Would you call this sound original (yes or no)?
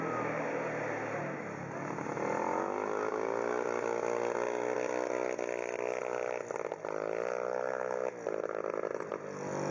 yes